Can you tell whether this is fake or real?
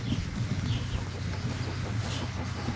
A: real